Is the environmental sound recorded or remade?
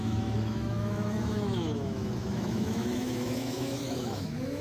remade